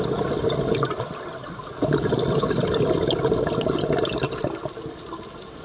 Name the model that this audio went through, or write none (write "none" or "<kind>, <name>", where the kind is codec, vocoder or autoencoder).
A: none